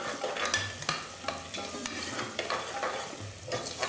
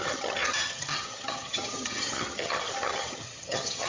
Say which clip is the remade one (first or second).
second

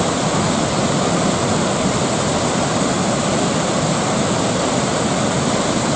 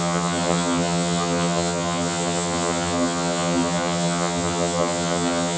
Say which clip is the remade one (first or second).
second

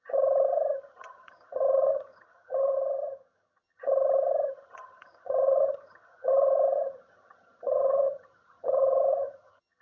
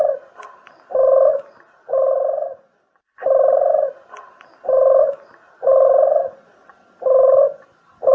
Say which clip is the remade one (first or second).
first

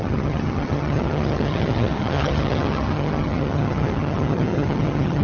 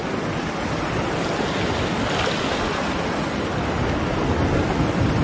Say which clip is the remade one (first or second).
first